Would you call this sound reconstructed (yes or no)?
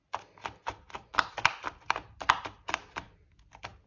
no